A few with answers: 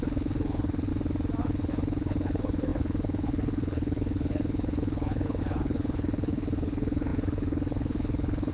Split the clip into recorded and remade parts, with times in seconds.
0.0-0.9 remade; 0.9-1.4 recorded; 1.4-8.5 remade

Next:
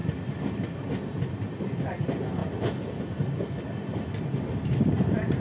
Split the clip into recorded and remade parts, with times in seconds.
0.0-5.4 recorded

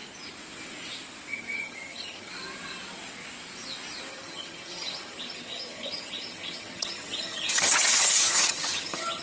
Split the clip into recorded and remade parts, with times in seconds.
0.0-1.3 recorded; 1.3-2.3 remade; 2.3-4.1 recorded; 4.1-9.2 remade

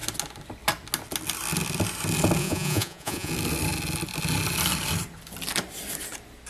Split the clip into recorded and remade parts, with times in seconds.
0.0-2.4 recorded; 2.4-3.3 remade; 3.3-6.5 recorded

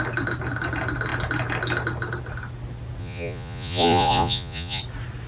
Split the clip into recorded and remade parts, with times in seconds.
0.0-3.0 recorded; 3.0-4.8 remade; 4.8-5.3 recorded